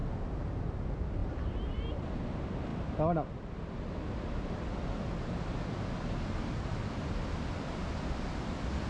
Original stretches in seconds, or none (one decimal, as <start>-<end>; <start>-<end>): 0.6-1.2; 1.8-8.9

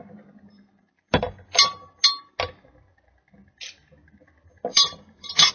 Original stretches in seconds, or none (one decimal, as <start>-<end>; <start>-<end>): 0.0-4.7

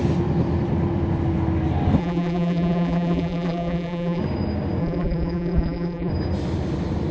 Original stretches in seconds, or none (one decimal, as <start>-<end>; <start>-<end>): 0.0-2.0; 4.2-4.8; 6.1-7.1

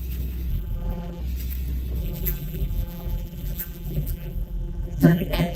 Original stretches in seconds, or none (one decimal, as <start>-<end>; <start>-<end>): 0.0-0.5; 1.2-2.0

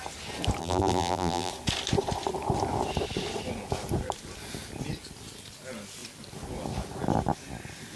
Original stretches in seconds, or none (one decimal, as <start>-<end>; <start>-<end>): 0.0-0.6; 1.5-8.0

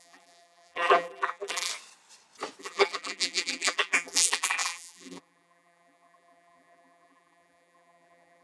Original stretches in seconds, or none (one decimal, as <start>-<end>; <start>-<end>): 1.7-2.6

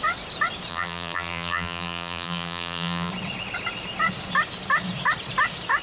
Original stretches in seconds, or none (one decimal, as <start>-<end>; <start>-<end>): 0.0-0.7; 3.1-5.8